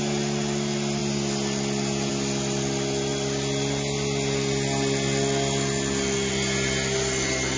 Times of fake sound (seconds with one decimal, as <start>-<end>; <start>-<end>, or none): none